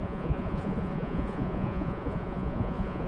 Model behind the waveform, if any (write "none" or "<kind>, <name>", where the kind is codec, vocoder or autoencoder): vocoder, Vocos